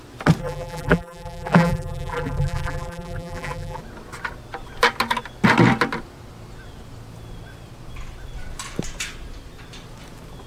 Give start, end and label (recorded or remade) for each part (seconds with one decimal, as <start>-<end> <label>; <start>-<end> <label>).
0.0-0.4 recorded; 0.4-3.8 remade; 3.8-10.5 recorded

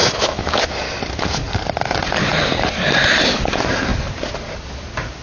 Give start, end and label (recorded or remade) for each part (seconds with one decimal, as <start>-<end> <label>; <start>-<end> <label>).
0.0-0.6 remade; 0.6-5.2 recorded

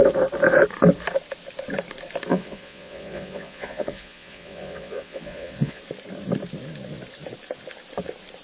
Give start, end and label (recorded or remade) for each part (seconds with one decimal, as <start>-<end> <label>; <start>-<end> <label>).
0.0-2.3 recorded; 2.3-5.8 remade; 5.8-8.4 recorded

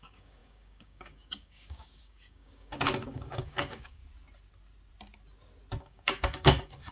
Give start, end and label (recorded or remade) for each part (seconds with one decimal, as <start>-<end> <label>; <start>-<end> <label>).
0.0-4.0 remade; 4.0-5.8 recorded; 5.8-6.9 remade

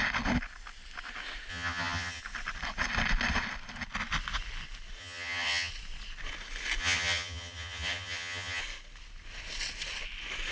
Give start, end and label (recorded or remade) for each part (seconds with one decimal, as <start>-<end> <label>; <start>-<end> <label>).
0.0-1.5 recorded; 1.5-2.2 remade; 2.2-5.0 recorded; 5.0-5.7 remade; 5.7-6.8 recorded; 6.8-8.6 remade; 8.6-10.5 recorded

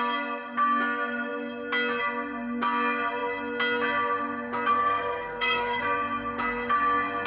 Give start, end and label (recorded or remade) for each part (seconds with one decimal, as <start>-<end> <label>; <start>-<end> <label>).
0.0-4.7 recorded; 4.7-5.8 remade; 5.8-7.3 recorded

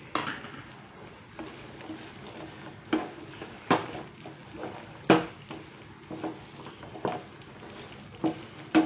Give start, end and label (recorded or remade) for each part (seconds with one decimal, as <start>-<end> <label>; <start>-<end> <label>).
0.0-8.9 recorded